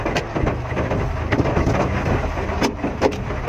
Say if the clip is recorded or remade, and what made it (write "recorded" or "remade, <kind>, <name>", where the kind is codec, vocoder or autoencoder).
recorded